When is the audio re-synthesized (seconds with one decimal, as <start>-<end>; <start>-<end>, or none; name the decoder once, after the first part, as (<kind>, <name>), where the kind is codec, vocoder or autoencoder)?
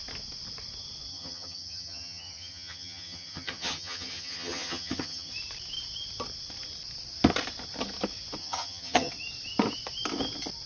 1.1-5.3 (vocoder, HiFi-GAN); 8.4-9.1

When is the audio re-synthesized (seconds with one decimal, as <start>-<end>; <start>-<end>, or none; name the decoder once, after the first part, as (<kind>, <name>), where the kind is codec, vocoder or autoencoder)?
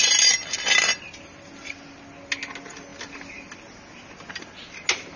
none